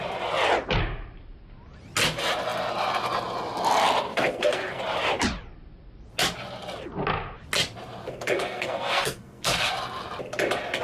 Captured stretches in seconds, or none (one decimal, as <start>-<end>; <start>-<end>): 0.0-4.1; 4.8-8.0; 9.7-10.8